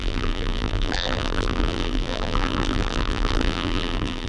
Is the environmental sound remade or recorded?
remade